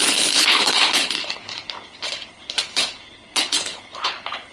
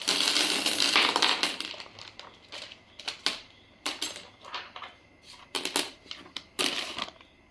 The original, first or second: second